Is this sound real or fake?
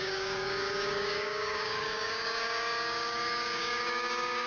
fake